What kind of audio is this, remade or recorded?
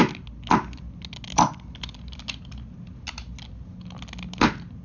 recorded